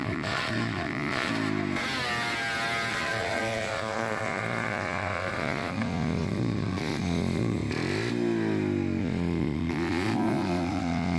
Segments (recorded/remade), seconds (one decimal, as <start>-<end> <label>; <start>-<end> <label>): 0.0-1.3 remade; 1.3-2.9 recorded; 2.9-7.6 remade; 7.6-9.0 recorded; 9.0-11.2 remade